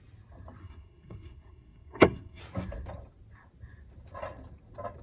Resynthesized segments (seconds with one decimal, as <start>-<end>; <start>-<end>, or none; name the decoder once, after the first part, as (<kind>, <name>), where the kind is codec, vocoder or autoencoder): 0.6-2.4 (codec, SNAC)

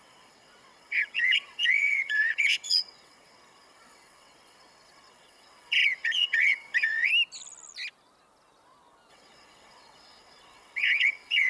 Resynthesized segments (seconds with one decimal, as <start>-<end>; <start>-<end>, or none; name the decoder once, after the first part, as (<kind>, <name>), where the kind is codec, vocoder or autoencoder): 0.0-7.1 (vocoder, WaveNeXt); 9.1-11.5

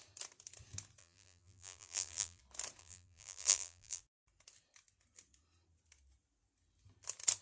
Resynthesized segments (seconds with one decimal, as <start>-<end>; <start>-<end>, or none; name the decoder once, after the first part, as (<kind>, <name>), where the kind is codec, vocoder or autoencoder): 1.0-2.4 (vocoder, BigVGAN v2); 2.8-4.0